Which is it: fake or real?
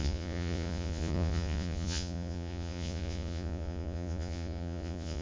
fake